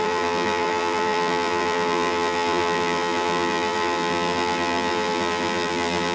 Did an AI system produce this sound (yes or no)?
yes